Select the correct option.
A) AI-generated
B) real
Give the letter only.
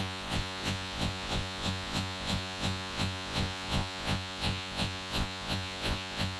A